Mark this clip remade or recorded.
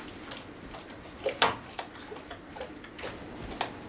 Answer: recorded